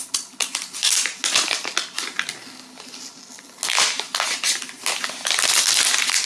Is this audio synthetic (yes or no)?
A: no